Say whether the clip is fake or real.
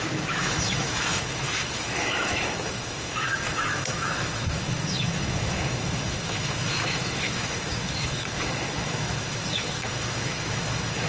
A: fake